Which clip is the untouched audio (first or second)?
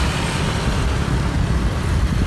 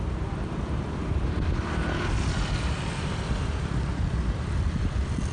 first